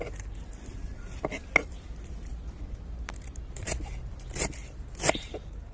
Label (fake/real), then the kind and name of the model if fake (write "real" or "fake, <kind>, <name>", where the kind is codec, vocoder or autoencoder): real